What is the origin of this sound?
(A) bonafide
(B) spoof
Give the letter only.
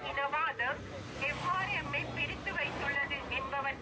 A